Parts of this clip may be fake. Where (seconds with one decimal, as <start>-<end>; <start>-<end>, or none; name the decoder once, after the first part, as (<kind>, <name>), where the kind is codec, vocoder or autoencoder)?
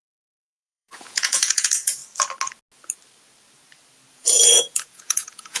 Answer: 0.0-2.0 (vocoder, Vocos); 4.1-5.6